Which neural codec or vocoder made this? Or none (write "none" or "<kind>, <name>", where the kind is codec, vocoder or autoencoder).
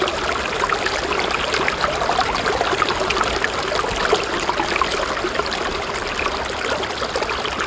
none